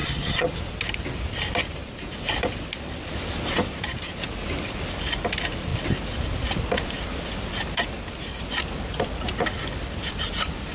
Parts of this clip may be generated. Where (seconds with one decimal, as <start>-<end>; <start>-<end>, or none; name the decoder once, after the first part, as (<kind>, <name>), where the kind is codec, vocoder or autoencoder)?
0.0-0.6 (vocoder, HiFi-GAN)